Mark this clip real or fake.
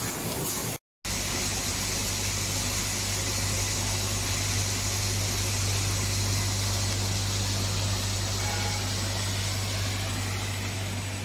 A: real